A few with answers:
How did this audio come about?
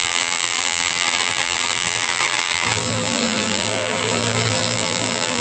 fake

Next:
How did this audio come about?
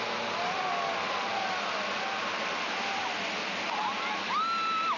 real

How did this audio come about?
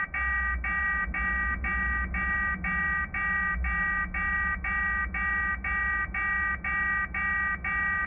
real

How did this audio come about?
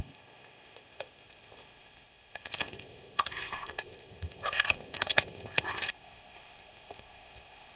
fake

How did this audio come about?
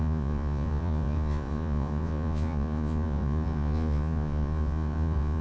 fake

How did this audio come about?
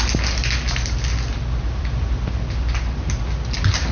real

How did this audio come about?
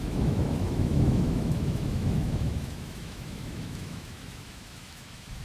fake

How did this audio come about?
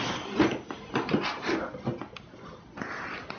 real